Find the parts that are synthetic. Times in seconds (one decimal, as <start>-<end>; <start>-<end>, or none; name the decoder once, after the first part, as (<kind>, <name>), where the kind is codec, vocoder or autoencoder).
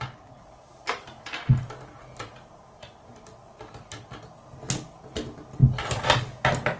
none